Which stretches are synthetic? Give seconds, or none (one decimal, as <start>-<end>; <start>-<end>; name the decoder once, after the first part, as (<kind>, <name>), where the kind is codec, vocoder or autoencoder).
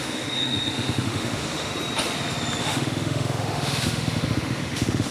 0.0-1.7 (autoencoder, DAC-VAE); 2.6-5.1